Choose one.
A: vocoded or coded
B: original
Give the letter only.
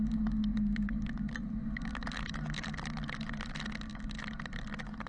B